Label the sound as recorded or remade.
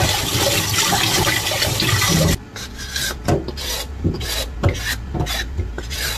recorded